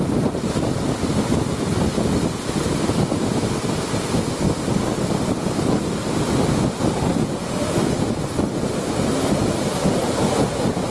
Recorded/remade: recorded